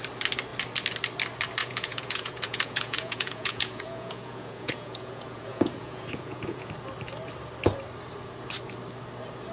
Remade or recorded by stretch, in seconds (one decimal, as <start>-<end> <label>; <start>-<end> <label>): 0.0-1.6 recorded; 1.6-6.7 remade; 6.7-9.5 recorded